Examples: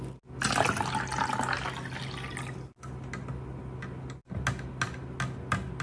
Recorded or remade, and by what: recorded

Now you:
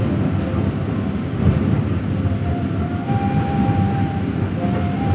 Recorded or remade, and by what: recorded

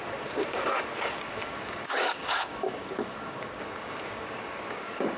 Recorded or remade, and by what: remade, codec, DAC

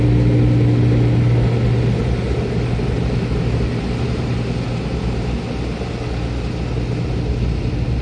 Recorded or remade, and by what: recorded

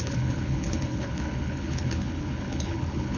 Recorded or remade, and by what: remade, codec, HILCodec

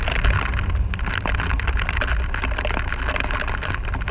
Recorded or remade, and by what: recorded